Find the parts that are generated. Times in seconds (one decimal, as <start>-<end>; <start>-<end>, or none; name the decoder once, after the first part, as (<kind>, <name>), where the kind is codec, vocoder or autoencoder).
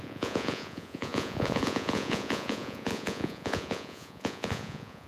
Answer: 0.0-5.1 (vocoder, Vocos)